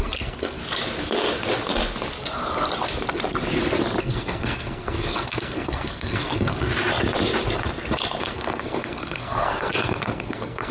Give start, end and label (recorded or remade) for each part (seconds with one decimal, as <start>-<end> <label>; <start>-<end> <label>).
0.0-0.6 remade; 0.6-4.0 recorded; 4.0-6.7 remade; 6.7-8.2 recorded; 8.2-10.7 remade